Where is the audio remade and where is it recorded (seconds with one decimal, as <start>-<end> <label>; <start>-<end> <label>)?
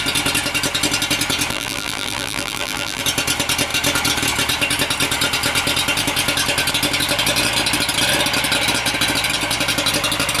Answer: 0.0-1.5 recorded; 1.5-3.0 remade; 3.0-10.4 recorded